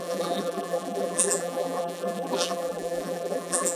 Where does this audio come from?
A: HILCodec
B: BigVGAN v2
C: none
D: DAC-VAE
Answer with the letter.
B